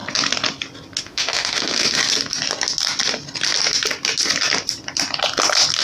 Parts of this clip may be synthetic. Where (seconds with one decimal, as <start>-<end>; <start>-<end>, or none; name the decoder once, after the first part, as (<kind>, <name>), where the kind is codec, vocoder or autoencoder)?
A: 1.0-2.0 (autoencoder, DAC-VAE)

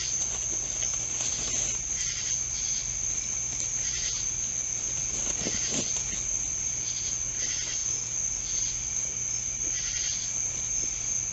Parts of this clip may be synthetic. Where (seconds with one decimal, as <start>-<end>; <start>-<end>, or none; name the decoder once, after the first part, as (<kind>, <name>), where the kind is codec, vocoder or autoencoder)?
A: none

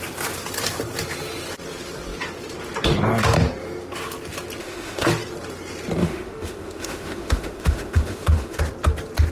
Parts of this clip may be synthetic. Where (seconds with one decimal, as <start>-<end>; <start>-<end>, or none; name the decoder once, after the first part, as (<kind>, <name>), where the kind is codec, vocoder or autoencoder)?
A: 4.6-5.1 (autoencoder, DAC-VAE); 6.0-8.6